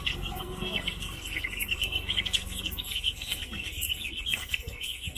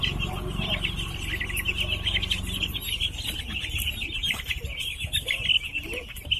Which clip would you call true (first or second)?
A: second